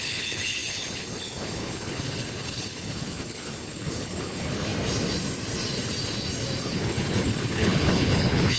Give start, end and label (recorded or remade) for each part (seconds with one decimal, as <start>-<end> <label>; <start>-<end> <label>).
0.0-4.7 remade; 4.7-6.6 recorded; 6.6-8.6 remade